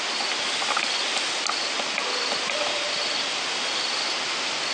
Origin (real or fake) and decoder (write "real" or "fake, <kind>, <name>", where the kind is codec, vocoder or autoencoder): real